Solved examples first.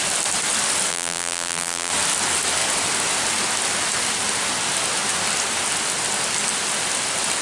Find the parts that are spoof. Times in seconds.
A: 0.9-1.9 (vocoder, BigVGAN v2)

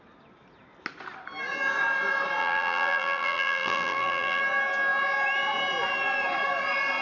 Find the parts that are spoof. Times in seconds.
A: 2.4-4.4 (vocoder, BigVGAN v2)